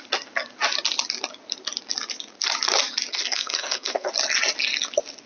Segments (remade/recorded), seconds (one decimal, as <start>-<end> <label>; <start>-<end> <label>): 0.0-3.1 recorded; 3.1-4.1 remade; 4.1-5.3 recorded